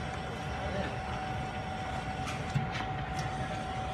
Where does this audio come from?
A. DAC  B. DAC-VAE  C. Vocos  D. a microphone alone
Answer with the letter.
D